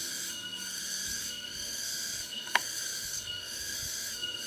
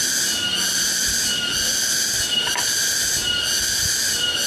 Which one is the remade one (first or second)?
first